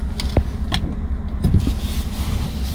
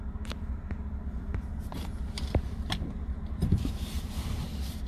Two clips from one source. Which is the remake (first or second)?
second